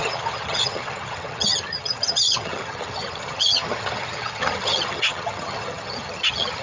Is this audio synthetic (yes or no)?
yes